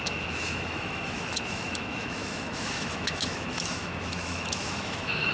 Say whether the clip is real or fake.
fake